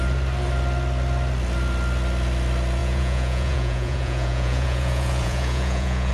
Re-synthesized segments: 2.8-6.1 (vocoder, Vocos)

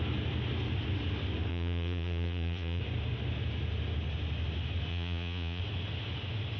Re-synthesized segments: 1.5-2.8 (vocoder, Vocos); 4.9-5.6

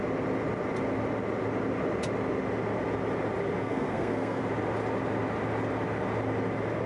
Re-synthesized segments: 3.6-4.4 (codec, SNAC)

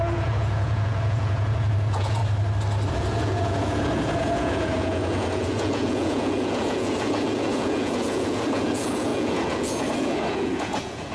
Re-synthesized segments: 0.0-2.2 (vocoder, Vocos); 2.9-11.1

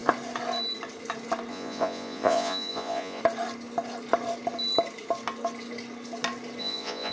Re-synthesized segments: 1.5-3.2 (vocoder, Vocos); 6.6-7.1